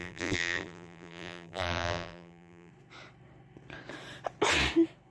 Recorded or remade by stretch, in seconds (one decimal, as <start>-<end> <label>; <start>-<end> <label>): 0.0-2.7 remade; 2.7-5.1 recorded